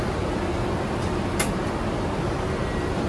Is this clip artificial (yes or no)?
no